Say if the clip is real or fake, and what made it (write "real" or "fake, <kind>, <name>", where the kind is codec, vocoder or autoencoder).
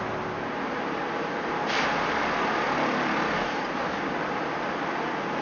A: real